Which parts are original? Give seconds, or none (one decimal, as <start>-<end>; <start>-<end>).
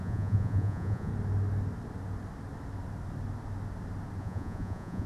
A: 1.1-4.2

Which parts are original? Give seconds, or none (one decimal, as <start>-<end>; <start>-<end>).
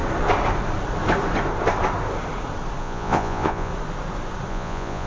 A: 0.0-2.8; 3.7-4.5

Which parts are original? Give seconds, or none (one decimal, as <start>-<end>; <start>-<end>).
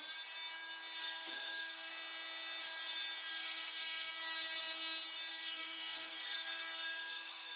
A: 0.0-1.0; 1.9-3.3; 4.1-5.3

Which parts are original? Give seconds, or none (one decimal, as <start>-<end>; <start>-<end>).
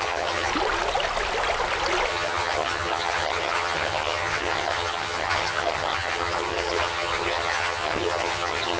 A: 0.5-2.1